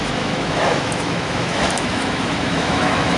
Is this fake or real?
fake